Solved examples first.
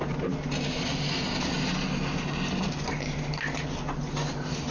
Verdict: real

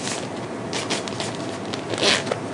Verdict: real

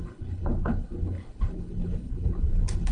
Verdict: fake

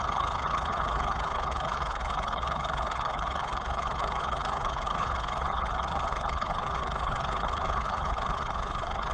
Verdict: fake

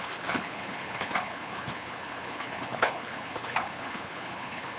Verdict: fake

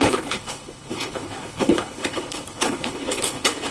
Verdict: fake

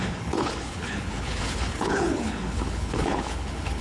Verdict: fake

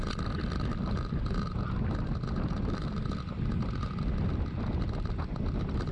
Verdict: real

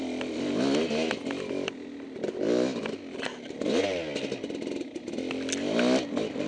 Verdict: real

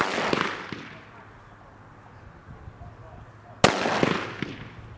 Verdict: real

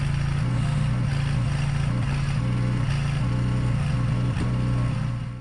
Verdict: real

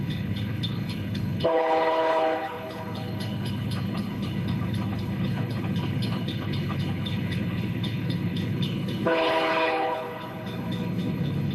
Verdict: fake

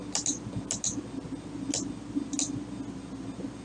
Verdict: real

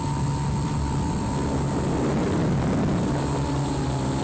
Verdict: real